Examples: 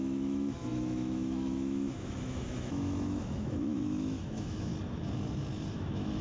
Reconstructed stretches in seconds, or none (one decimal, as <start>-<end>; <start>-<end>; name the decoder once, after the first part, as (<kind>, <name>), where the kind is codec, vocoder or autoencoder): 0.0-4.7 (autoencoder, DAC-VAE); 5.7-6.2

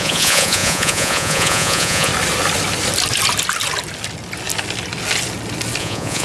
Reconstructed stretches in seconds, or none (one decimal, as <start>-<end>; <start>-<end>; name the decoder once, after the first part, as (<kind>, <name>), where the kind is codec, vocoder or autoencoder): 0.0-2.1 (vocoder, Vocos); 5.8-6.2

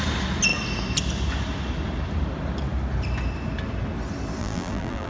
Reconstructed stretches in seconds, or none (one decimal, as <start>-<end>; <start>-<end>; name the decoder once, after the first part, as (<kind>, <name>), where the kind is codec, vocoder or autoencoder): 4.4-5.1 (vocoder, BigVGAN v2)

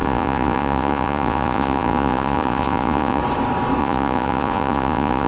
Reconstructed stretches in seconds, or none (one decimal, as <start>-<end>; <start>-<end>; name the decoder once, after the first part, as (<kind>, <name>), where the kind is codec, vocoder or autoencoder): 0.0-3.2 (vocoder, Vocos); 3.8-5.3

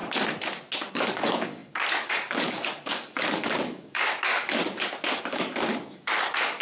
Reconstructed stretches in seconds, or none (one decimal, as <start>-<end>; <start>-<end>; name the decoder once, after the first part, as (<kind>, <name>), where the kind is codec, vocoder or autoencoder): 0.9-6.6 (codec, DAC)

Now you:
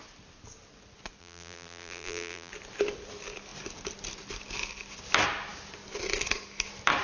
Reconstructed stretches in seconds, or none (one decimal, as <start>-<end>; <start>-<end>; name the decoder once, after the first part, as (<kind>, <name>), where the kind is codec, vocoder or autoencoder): 1.2-2.5 (vocoder, BigVGAN v2)

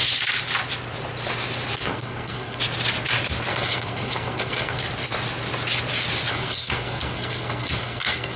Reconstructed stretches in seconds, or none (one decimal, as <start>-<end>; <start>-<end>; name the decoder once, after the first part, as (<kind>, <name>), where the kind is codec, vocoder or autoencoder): 1.8-2.6 (codec, SNAC); 3.5-4.8; 6.3-8.4